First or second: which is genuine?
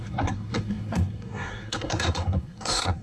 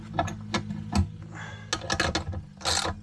second